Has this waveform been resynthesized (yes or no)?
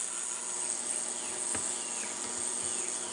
no